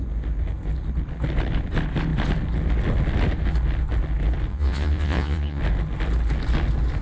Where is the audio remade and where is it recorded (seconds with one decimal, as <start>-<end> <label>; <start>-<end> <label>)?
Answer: 0.0-4.5 recorded; 4.5-5.6 remade; 5.6-7.0 recorded